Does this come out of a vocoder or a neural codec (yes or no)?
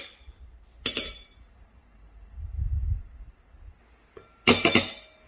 no